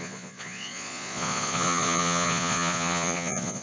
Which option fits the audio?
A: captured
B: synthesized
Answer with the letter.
B